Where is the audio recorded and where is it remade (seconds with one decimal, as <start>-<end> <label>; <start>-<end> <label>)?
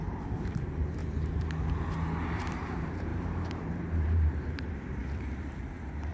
0.0-1.0 remade; 1.0-2.3 recorded; 2.3-6.1 remade